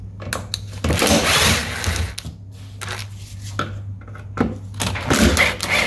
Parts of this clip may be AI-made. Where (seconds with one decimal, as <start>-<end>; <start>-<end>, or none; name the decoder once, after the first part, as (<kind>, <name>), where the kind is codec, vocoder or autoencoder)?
none